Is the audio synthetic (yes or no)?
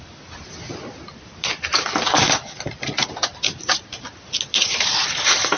no